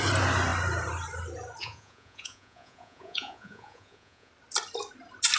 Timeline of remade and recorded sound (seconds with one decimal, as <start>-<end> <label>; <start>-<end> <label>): 0.0-1.6 recorded; 1.6-4.3 remade; 4.3-5.4 recorded